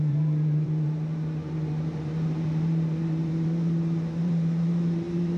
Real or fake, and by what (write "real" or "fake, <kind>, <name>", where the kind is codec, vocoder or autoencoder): fake, vocoder, BigVGAN v2